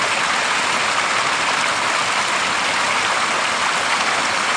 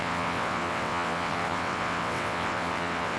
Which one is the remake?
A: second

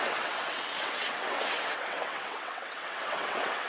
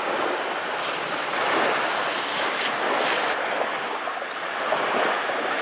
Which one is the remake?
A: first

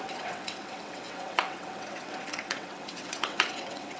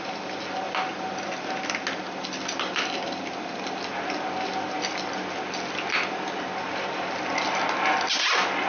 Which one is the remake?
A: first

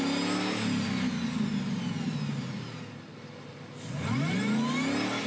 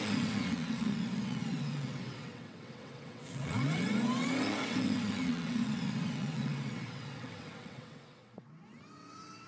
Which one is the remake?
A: second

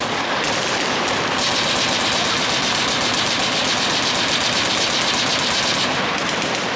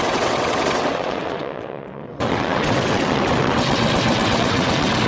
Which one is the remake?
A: second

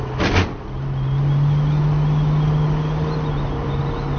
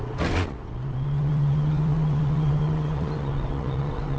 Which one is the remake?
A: second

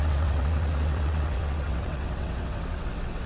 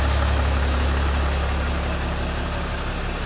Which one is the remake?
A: first